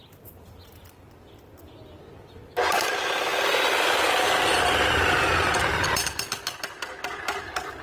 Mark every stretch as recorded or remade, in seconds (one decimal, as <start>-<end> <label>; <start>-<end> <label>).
0.0-7.8 recorded